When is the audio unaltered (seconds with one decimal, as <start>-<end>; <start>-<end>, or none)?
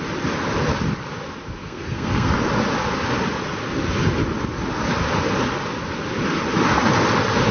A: 0.0-1.6; 2.3-7.5